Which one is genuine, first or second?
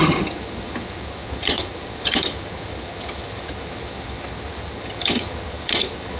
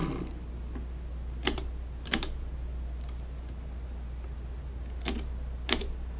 second